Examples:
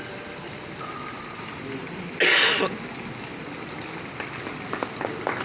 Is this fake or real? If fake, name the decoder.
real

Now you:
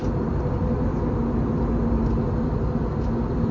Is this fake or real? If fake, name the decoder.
real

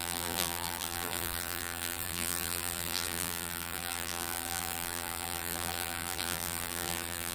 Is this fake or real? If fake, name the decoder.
fake, vocoder, BigVGAN v2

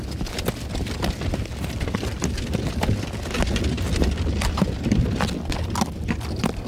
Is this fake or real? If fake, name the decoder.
real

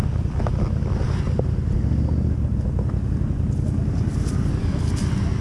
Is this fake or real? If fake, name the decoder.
real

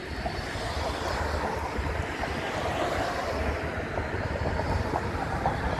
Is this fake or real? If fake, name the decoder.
real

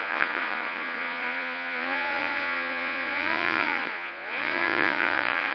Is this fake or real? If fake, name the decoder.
fake, vocoder, Vocos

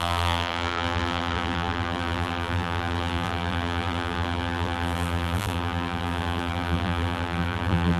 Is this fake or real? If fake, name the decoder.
fake, vocoder, BigVGAN v2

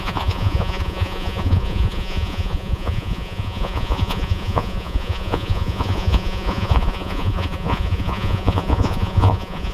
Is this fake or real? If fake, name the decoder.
fake, vocoder, Vocos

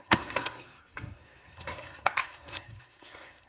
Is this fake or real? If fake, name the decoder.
fake, codec, SNAC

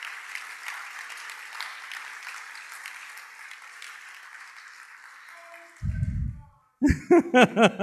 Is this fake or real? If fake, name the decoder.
real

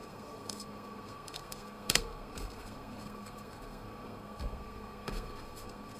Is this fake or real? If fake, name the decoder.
fake, codec, SNAC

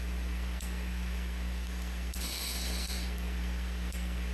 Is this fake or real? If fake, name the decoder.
fake, codec, SNAC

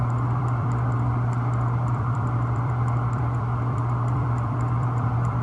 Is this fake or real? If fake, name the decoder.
fake, vocoder, BigVGAN v2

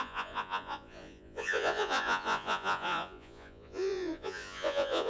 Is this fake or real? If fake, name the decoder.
fake, vocoder, Vocos